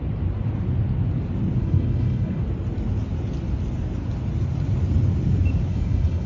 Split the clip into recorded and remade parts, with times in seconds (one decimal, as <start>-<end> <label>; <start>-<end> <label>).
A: 0.0-1.6 recorded; 1.6-2.4 remade; 2.4-5.7 recorded; 5.7-6.3 remade